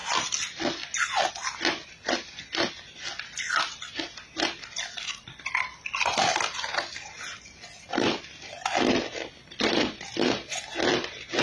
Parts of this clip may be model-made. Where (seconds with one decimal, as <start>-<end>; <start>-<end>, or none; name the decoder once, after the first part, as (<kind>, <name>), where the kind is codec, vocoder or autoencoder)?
none